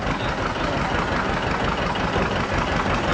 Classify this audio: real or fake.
real